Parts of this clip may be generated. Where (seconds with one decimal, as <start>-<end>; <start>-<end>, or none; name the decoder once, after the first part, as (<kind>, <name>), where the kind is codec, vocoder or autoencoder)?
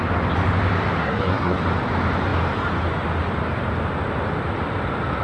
1.0-1.6 (codec, SNAC)